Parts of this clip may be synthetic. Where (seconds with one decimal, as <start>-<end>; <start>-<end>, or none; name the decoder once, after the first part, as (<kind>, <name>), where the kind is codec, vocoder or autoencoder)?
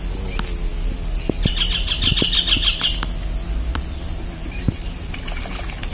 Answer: none